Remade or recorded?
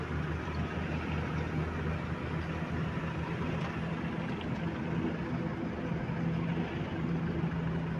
recorded